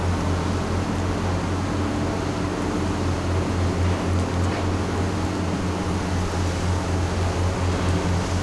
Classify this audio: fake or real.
real